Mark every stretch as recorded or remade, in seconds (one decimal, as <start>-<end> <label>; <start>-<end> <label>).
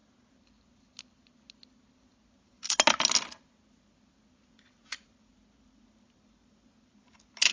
0.0-4.3 recorded; 4.3-7.5 remade